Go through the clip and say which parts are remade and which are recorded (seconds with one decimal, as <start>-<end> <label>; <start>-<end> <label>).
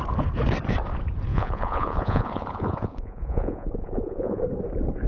0.0-1.3 recorded; 1.3-4.4 remade; 4.4-5.1 recorded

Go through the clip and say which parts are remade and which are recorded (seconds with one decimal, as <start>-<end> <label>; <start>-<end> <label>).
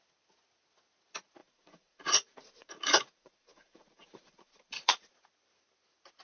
0.0-1.4 recorded; 1.4-5.1 remade; 5.1-6.2 recorded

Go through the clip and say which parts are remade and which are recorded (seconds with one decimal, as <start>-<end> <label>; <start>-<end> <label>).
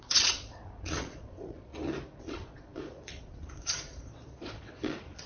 0.0-1.7 remade; 1.7-2.2 recorded; 2.2-5.3 remade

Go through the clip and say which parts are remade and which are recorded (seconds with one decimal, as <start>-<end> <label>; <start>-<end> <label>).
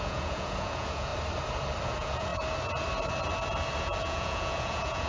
0.0-1.1 remade; 1.1-1.8 recorded; 1.8-2.3 remade; 2.3-3.8 recorded; 3.8-5.1 remade